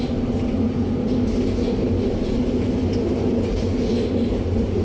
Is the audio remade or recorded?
recorded